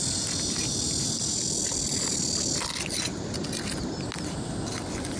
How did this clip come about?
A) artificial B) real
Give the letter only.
B